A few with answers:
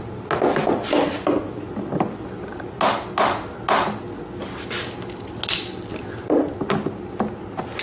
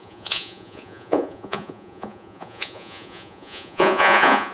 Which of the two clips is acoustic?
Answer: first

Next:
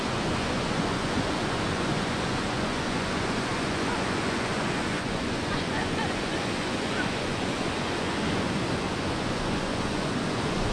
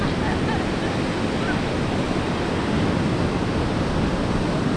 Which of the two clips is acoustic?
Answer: second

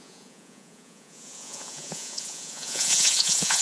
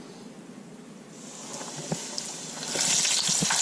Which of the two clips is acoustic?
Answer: second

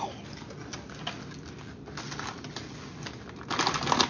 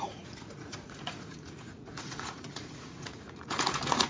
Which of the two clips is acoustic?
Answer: first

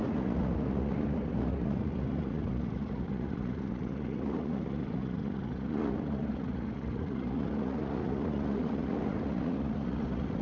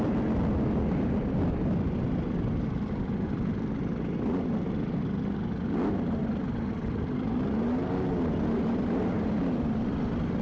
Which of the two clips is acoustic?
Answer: second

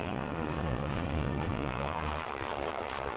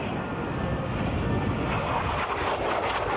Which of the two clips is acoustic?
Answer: second